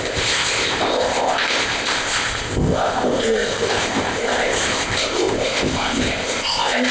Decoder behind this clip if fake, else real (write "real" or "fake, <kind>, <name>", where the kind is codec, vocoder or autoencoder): fake, codec, ZipCodec